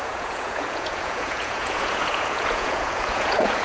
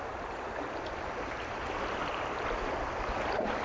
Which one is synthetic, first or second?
first